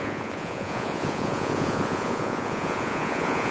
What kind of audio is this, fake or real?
fake